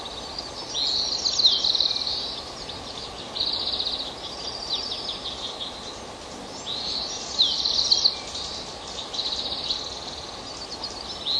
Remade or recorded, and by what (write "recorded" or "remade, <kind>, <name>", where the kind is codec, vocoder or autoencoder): recorded